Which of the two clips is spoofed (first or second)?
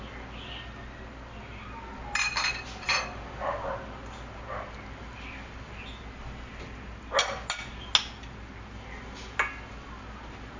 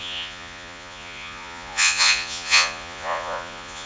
second